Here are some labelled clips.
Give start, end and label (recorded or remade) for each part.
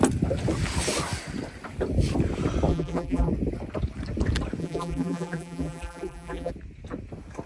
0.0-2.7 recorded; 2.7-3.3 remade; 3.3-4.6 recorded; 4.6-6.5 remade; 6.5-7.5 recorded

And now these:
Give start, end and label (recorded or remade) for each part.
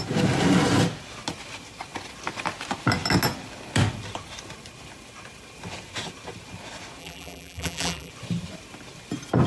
0.0-7.0 recorded; 7.0-8.1 remade; 8.1-9.5 recorded